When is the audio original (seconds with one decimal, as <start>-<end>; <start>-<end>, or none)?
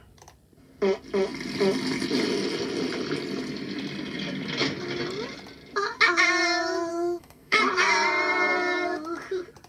0.0-6.9; 7.6-9.7